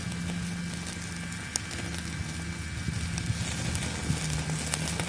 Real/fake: real